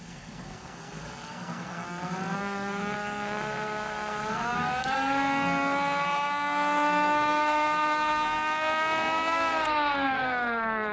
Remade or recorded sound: remade